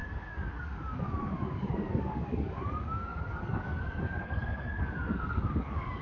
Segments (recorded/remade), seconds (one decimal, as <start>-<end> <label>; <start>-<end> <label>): 0.0-6.0 remade